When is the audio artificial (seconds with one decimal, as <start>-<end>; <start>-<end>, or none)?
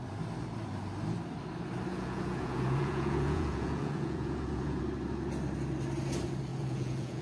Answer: 1.9-4.8; 6.5-7.2